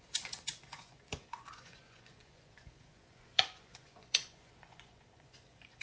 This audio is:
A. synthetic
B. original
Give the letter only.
A